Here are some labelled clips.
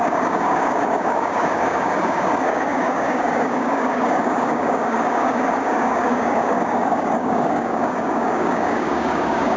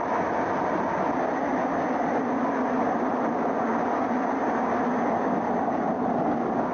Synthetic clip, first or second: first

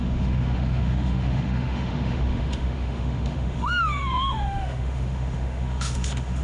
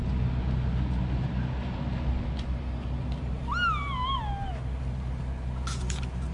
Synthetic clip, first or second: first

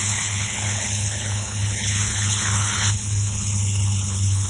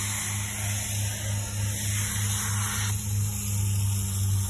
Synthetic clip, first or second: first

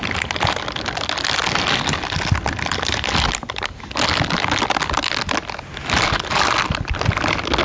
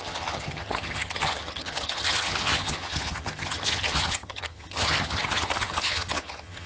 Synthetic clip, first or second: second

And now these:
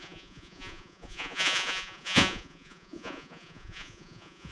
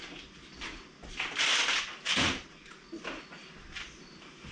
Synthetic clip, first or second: first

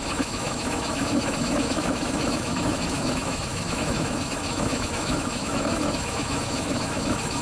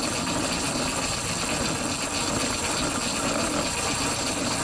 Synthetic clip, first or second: first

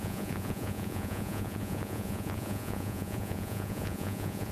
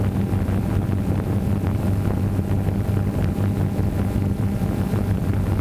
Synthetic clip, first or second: first